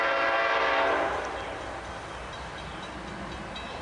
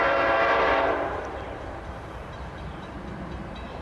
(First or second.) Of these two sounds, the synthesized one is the second